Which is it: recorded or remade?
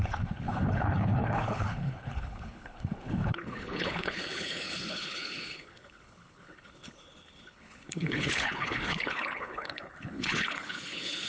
remade